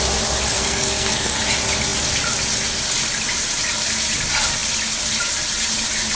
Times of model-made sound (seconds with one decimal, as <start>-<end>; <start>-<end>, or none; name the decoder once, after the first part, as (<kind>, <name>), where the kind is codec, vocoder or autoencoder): 0.5-1.4 (codec, SNAC)